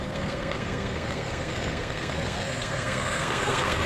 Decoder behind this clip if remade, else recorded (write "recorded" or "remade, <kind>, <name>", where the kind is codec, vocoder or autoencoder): remade, codec, SNAC